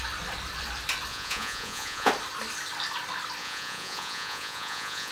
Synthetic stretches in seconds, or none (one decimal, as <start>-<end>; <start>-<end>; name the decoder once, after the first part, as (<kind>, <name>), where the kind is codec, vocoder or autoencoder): 1.1-2.1 (vocoder, Vocos); 3.4-5.1